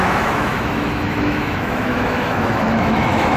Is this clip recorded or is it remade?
remade